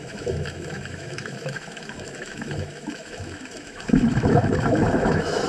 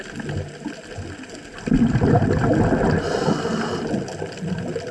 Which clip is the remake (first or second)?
first